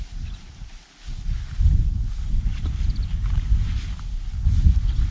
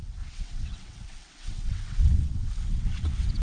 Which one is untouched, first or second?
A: first